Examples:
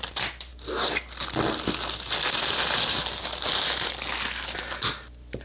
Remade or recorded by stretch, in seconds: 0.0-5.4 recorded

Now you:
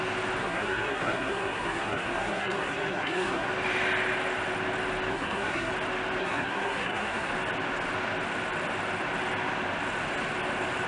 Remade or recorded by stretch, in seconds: 0.0-0.4 recorded; 0.4-3.5 remade; 3.5-5.1 recorded; 5.1-5.7 remade; 5.7-6.2 recorded; 6.2-7.3 remade; 7.3-10.9 recorded

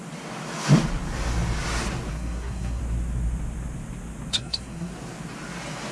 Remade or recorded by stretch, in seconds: 0.0-2.1 recorded; 2.1-2.8 remade; 2.8-4.3 recorded; 4.3-4.9 remade; 4.9-5.9 recorded

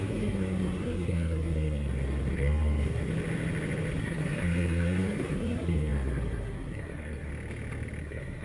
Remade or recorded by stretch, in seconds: 0.0-3.1 remade; 3.1-4.0 recorded; 4.0-7.3 remade; 7.3-8.0 recorded; 8.0-8.4 remade